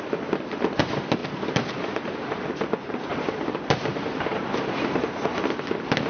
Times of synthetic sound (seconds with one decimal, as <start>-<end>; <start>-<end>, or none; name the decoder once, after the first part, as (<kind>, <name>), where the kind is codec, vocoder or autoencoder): 1.2-2.5 (vocoder, BigVGAN v2)